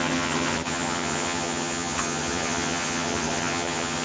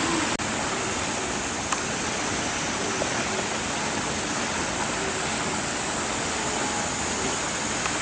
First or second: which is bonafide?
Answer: second